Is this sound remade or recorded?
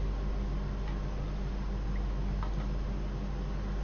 recorded